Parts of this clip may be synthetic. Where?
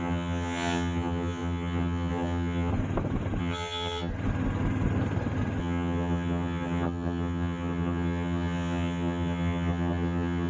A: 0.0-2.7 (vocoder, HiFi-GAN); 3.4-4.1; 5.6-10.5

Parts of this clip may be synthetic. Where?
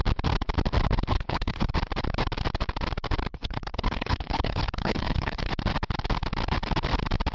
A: 1.1-1.7 (codec, HILCodec); 3.3-5.5